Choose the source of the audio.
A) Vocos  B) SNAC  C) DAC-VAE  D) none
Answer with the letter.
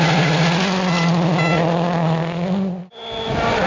D